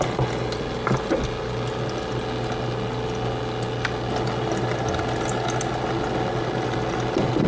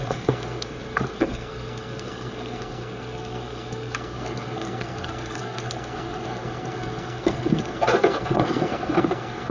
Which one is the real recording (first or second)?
first